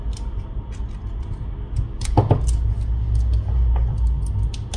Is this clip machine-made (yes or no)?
no